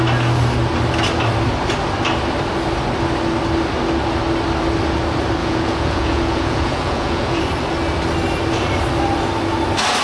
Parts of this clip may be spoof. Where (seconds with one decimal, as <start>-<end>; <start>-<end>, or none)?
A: 5.4-7.4